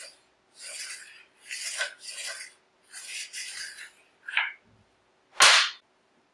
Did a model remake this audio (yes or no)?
no